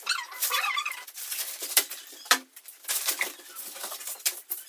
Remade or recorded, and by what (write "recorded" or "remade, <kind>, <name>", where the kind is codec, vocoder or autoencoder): recorded